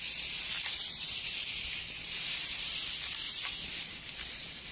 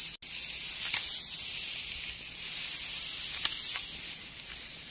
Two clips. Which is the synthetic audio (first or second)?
first